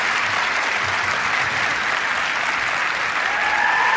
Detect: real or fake real